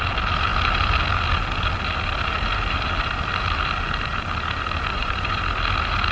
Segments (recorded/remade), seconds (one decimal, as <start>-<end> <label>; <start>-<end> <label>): 0.0-4.9 recorded; 4.9-5.4 remade; 5.4-6.1 recorded